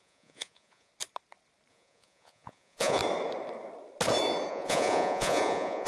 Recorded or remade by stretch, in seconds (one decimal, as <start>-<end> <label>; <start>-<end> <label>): 0.0-0.9 remade; 0.9-1.7 recorded; 1.7-3.0 remade; 3.0-4.5 recorded; 4.5-5.9 remade